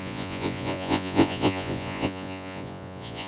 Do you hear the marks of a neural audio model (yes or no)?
yes